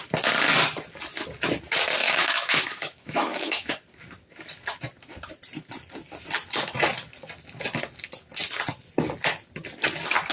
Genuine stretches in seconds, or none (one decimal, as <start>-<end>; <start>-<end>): 0.0-2.0; 3.7-10.3